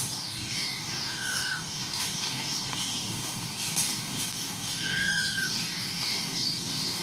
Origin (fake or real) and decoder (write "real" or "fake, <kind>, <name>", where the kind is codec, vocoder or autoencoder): fake, codec, DAC